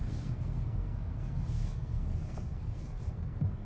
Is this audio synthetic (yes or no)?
yes